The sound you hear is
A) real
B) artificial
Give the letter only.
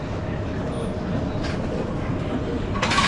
A